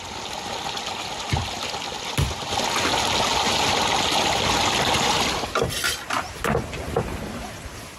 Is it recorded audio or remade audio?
recorded